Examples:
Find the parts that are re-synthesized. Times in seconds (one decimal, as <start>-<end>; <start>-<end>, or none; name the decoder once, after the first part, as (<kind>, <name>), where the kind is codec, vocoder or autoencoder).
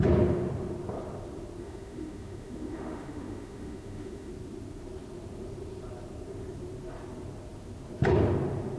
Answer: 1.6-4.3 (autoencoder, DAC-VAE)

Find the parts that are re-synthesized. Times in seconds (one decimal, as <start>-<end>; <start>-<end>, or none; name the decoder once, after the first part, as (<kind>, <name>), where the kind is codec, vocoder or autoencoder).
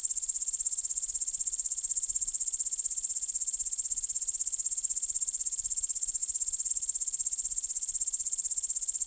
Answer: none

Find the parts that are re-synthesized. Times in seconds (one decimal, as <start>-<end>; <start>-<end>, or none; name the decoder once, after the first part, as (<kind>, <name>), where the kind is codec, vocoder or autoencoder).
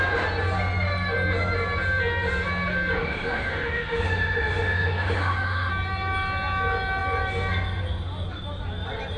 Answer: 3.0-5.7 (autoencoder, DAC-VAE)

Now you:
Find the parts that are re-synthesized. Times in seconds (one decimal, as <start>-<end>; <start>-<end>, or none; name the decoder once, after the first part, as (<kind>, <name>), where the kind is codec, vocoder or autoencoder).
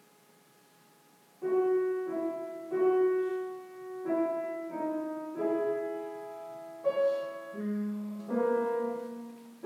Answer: 7.6-8.2 (autoencoder, DAC-VAE)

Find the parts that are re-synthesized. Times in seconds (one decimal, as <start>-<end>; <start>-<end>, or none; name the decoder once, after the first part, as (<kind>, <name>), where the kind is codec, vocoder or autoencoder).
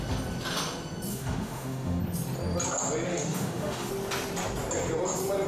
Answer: 1.1-2.0 (autoencoder, DAC-VAE); 3.1-3.9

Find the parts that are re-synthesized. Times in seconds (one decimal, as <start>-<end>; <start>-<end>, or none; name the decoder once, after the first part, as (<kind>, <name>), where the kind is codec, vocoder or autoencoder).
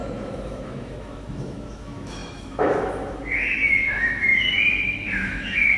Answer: 0.0-5.8 (autoencoder, DAC-VAE)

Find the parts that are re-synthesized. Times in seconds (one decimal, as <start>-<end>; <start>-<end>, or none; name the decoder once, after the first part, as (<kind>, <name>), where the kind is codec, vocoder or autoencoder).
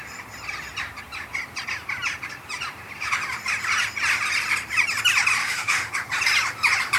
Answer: 5.4-5.9 (autoencoder, DAC-VAE)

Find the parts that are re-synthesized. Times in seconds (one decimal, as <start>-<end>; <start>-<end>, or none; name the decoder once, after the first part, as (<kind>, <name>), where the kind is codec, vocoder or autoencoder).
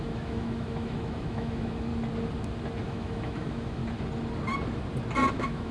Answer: 0.0-1.9 (autoencoder, DAC-VAE); 2.8-3.8; 5.3-5.7